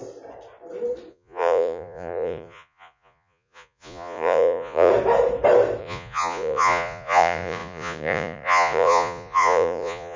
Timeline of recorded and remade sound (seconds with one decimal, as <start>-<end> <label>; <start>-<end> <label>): 0.0-1.1 recorded; 1.1-4.9 remade; 4.9-5.8 recorded; 5.8-10.2 remade